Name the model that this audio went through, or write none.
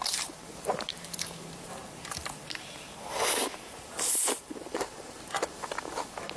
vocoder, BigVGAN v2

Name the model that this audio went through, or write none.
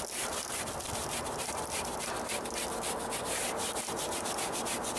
none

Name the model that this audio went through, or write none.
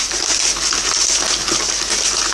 none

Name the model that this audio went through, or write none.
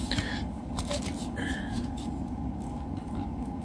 codec, DAC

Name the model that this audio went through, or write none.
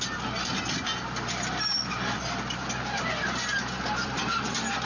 none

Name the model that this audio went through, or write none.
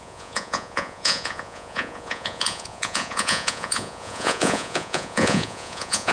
vocoder, Vocos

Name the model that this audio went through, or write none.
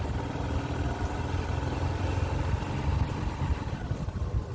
none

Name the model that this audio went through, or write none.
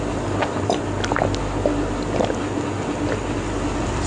none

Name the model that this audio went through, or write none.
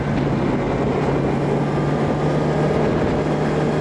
none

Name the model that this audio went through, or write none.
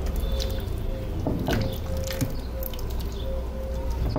none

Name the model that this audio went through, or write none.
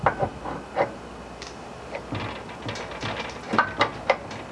none